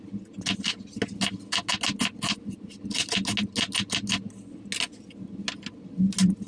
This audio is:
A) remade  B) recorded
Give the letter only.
B